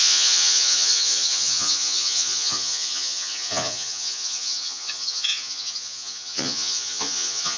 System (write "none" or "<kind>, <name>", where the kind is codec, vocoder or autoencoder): vocoder, Vocos